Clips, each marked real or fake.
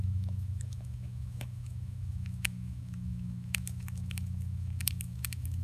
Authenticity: fake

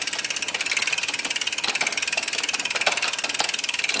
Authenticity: real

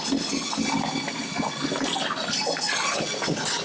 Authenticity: real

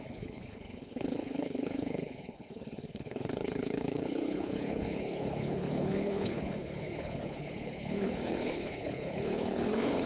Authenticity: fake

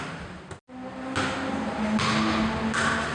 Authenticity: real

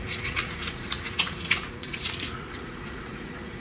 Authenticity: fake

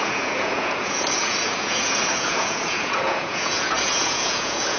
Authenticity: fake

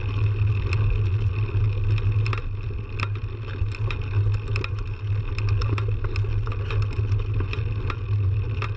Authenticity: real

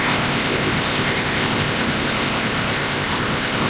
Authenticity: fake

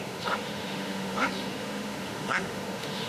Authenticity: fake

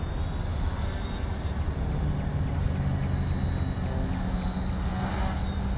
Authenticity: real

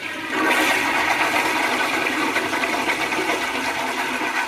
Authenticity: real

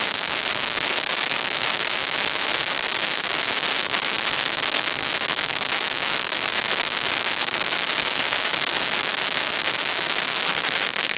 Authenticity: fake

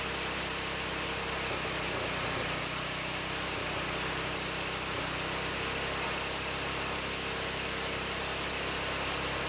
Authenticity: real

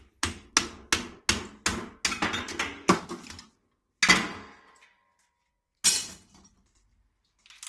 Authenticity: real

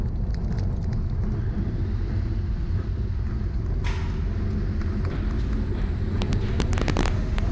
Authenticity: real